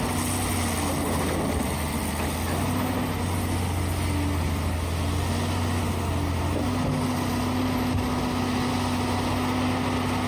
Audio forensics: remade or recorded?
recorded